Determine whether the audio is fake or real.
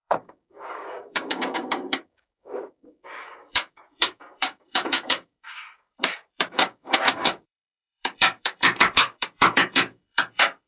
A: fake